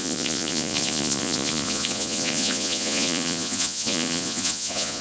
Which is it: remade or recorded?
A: remade